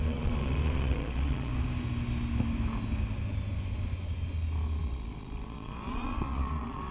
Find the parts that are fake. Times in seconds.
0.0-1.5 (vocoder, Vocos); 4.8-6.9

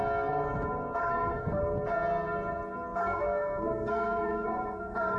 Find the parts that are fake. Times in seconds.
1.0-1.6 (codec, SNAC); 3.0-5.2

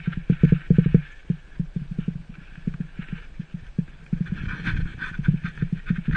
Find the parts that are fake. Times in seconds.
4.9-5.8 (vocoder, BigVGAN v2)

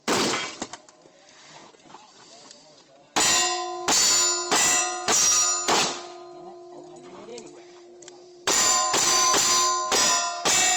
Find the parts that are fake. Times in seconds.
7.3-9.5 (vocoder, BigVGAN v2)

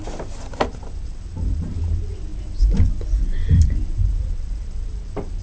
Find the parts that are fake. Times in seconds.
none

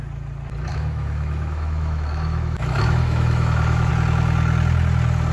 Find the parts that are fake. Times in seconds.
0.7-3.9 (autoencoder, DAC-VAE)